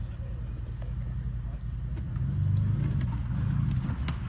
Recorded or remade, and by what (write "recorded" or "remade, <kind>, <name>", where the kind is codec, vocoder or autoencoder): recorded